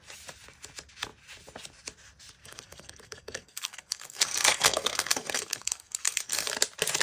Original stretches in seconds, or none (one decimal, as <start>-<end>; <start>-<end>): 0.0-2.4; 6.5-7.0